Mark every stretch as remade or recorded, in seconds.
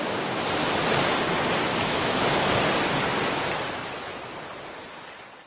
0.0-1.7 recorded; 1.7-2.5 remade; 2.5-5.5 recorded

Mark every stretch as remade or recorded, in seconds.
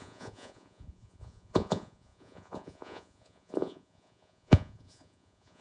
0.0-5.6 remade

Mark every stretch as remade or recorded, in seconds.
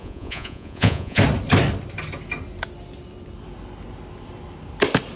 0.0-1.2 remade; 1.2-5.2 recorded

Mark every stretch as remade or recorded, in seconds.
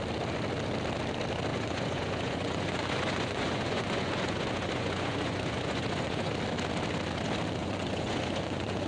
0.0-1.5 recorded; 1.5-6.3 remade; 6.3-7.6 recorded; 7.6-8.9 remade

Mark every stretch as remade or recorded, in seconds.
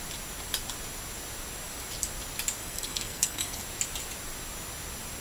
0.0-2.6 recorded; 2.6-3.6 remade; 3.6-5.2 recorded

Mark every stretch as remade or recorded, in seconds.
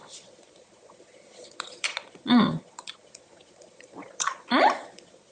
0.0-5.3 remade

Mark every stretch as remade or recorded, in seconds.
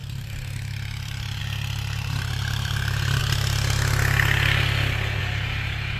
0.0-3.2 remade; 3.2-5.2 recorded; 5.2-6.0 remade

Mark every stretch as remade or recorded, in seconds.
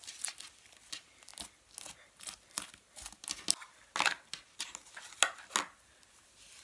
0.0-6.6 recorded